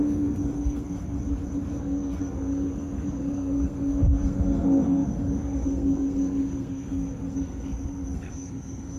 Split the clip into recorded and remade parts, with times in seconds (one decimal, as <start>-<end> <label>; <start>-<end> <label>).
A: 0.0-1.2 remade; 1.2-1.8 recorded; 1.8-9.0 remade